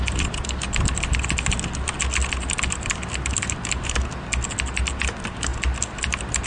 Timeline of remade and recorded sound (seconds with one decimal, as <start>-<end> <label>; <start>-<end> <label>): 0.0-6.5 recorded